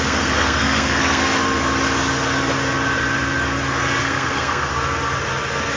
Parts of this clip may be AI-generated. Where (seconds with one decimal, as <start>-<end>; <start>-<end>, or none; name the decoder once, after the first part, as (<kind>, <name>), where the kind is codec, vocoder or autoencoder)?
0.0-1.2 (codec, SNAC); 4.0-4.7